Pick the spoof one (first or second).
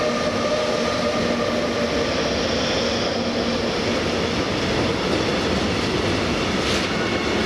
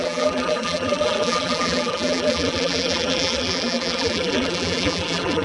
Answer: second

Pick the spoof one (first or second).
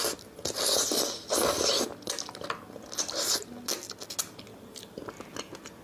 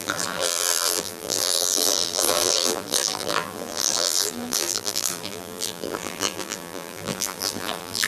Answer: second